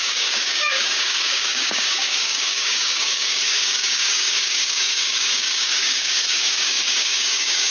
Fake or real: fake